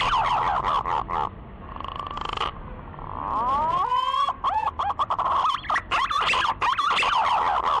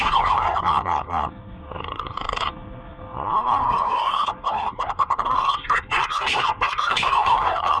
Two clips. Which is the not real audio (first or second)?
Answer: second